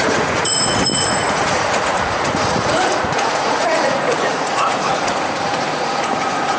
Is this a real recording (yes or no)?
no